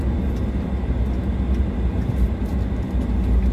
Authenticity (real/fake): real